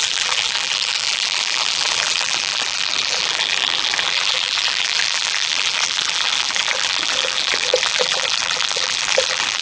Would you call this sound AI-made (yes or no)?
yes